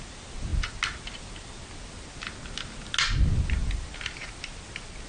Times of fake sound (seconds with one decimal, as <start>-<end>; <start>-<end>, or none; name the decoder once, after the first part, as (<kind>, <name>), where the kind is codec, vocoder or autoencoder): none